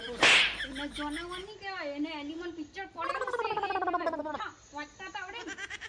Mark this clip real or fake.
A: real